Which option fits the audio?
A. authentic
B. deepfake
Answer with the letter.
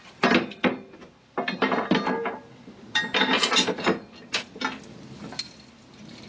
A